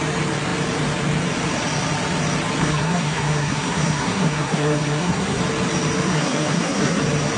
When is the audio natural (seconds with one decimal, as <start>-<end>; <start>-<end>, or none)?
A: 0.0-2.6; 5.4-6.1; 7.0-7.4